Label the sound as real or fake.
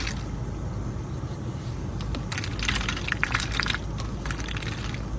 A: real